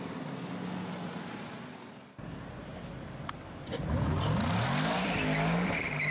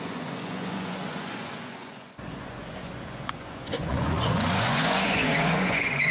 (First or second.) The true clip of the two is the first